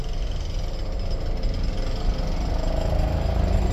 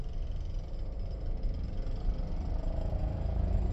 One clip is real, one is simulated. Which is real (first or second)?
first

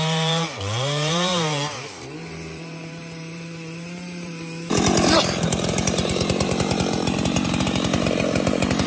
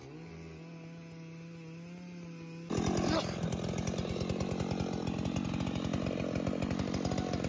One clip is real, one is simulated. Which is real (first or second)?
second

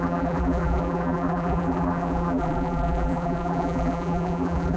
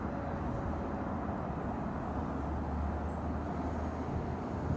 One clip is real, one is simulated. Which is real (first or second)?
second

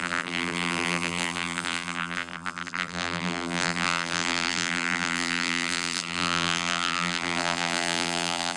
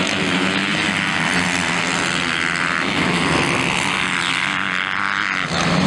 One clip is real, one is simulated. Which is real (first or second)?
second